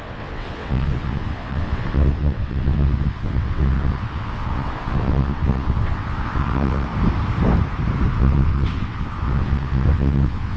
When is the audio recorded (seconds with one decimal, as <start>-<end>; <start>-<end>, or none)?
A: 6.9-8.2